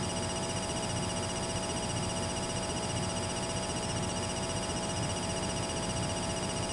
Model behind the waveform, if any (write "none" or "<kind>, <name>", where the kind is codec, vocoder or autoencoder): none